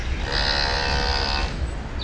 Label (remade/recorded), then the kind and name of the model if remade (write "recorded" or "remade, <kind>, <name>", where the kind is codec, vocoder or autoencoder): recorded